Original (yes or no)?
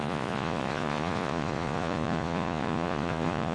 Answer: no